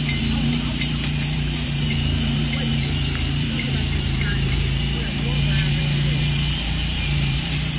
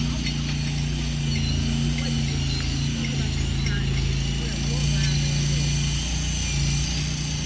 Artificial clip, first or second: first